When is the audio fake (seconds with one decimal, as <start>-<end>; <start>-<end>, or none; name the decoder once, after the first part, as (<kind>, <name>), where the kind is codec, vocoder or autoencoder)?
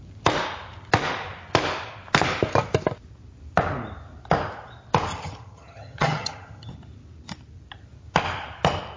5.1-6.7 (vocoder, HiFi-GAN)